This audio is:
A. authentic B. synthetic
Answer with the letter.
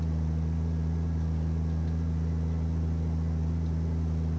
A